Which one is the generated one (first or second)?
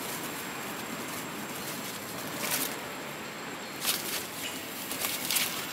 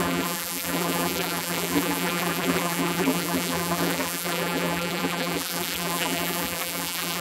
second